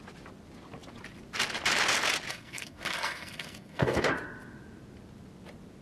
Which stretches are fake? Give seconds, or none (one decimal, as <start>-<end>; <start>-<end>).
2.3-4.1